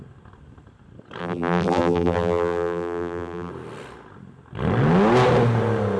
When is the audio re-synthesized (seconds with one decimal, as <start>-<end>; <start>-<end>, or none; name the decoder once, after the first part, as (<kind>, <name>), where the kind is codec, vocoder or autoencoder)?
1.2-3.5 (vocoder, BigVGAN v2)